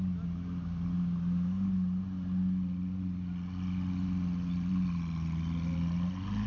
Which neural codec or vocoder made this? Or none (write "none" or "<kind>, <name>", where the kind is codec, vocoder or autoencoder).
none